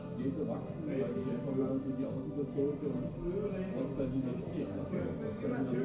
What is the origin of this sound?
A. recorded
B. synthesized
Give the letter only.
A